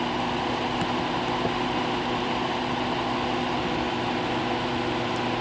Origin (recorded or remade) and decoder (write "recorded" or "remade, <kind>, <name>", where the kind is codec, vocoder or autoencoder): remade, vocoder, BigVGAN v2